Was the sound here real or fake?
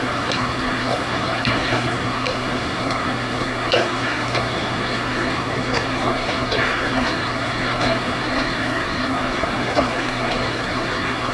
fake